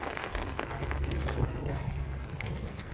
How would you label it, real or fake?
fake